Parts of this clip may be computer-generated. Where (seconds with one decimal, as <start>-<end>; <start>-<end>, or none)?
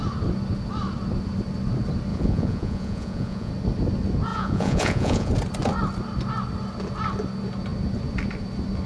2.1-3.5; 4.3-5.3